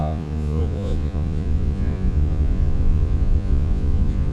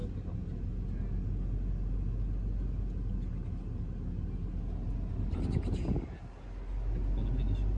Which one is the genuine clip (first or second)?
second